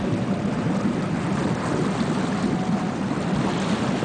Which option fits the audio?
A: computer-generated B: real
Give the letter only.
B